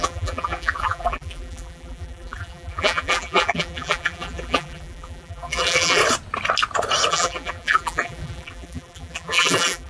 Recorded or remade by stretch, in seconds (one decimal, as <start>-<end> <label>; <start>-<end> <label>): 0.0-6.0 remade; 6.0-7.1 recorded; 7.1-9.9 remade